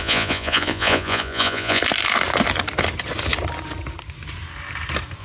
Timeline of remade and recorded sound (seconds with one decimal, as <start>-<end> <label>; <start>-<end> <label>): 0.0-1.8 remade; 1.8-5.2 recorded